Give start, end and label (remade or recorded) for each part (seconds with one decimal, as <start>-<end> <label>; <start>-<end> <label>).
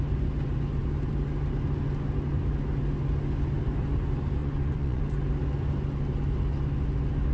0.0-4.4 recorded; 4.4-5.0 remade; 5.0-7.3 recorded